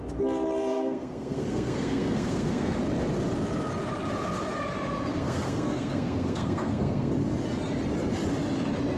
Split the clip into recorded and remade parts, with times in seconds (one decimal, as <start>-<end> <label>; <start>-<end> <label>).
0.0-0.7 recorded; 0.7-2.8 remade; 2.8-5.1 recorded; 5.1-7.1 remade; 7.1-9.0 recorded